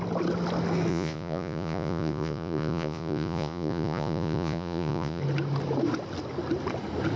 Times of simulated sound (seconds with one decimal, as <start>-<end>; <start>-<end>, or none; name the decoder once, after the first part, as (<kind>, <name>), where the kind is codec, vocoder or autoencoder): 0.9-5.2 (vocoder, Vocos)